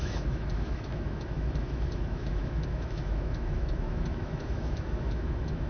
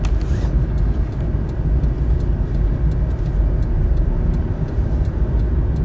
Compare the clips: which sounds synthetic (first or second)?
first